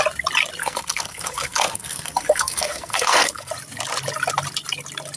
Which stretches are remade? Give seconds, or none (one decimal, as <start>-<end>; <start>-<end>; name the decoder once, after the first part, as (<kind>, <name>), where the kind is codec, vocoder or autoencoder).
0.6-3.5 (codec, SNAC)

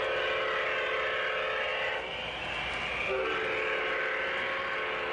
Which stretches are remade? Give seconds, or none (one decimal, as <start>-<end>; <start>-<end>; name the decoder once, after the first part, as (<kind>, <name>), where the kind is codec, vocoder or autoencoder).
none